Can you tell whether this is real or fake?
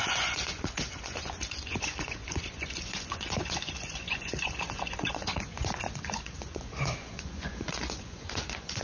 fake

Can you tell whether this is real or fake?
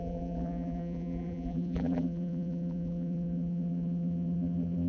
fake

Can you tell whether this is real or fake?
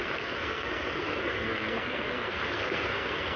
fake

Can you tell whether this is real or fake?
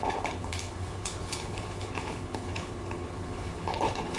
fake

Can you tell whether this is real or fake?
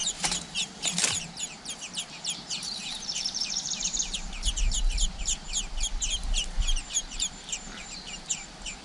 fake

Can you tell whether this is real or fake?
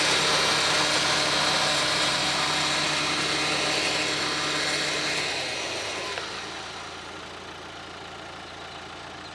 real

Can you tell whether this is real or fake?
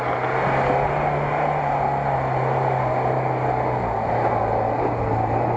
real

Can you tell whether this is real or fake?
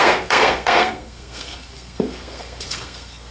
fake